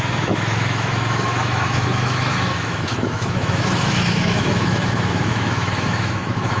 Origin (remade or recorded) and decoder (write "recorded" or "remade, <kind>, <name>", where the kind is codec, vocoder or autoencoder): remade, autoencoder, DAC-VAE